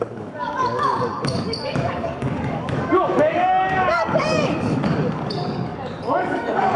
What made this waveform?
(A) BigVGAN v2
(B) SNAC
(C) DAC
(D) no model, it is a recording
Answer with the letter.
C